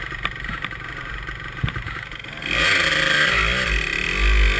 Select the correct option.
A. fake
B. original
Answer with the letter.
B